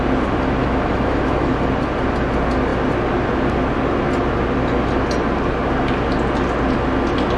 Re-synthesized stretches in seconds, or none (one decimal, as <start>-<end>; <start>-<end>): 0.6-1.5